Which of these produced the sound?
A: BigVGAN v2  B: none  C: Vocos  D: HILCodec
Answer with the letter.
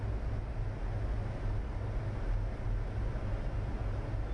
B